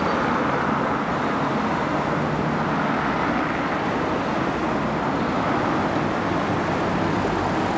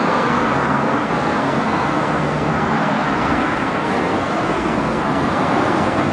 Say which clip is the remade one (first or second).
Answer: second